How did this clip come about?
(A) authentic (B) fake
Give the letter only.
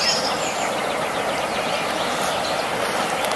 A